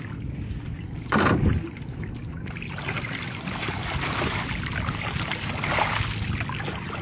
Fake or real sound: real